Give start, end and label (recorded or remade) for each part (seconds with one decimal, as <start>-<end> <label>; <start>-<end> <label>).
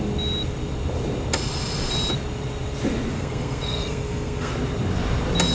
0.0-3.1 recorded; 3.1-4.5 remade; 4.5-5.5 recorded